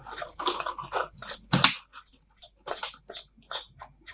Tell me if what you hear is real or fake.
real